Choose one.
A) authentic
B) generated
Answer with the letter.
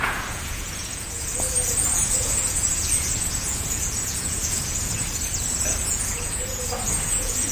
B